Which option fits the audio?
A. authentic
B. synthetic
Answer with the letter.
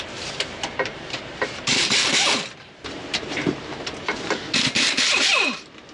B